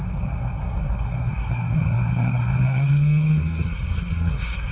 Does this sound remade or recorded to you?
remade